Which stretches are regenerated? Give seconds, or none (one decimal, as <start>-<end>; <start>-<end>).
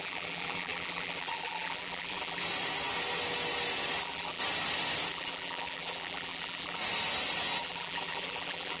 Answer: 0.0-2.4; 4.0-4.4; 5.1-6.8; 7.6-8.8